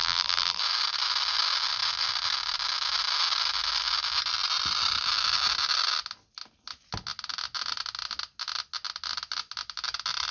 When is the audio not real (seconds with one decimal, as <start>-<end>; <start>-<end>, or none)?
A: 0.0-0.6